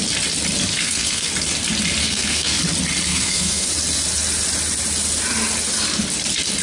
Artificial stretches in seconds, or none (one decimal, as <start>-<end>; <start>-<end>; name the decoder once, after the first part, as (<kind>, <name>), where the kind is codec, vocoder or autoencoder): 0.7-1.3 (codec, SNAC); 2.0-2.6; 3.1-3.7